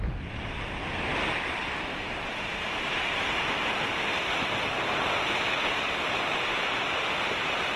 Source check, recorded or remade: recorded